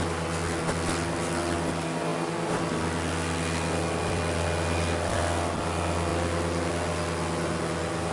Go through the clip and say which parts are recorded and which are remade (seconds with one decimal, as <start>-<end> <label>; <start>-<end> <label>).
0.0-8.1 recorded